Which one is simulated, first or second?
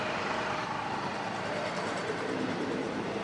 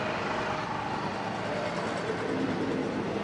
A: first